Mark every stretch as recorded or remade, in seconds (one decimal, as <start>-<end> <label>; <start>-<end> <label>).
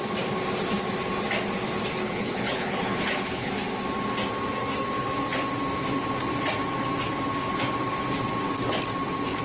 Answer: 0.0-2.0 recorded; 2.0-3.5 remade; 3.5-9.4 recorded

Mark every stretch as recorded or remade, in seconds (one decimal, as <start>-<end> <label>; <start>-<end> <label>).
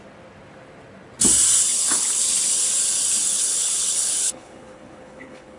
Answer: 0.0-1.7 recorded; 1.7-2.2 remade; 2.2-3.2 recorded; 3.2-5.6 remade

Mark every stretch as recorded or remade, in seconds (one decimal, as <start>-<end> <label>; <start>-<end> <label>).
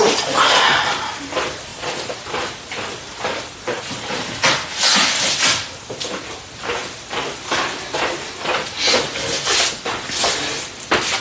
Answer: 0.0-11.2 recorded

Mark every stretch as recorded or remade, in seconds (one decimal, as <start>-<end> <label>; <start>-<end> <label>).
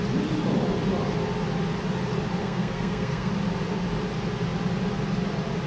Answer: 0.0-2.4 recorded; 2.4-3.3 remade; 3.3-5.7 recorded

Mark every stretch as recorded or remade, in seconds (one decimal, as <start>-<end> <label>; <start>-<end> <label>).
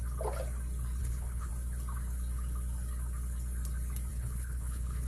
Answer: 0.0-1.0 recorded; 1.0-1.5 remade; 1.5-4.1 recorded; 4.1-5.1 remade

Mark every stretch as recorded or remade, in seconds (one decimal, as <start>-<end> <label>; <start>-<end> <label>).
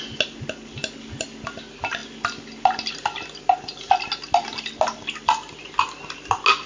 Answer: 0.0-6.7 recorded